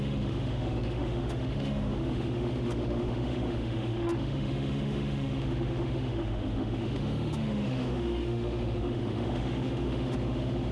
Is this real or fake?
fake